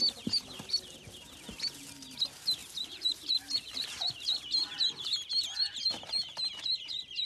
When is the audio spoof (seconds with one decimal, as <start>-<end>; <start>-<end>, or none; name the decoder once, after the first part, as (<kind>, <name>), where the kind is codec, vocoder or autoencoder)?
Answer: 2.6-6.8 (vocoder, BigVGAN v2)